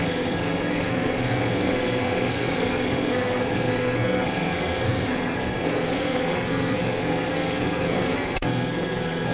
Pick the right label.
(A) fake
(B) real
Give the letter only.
A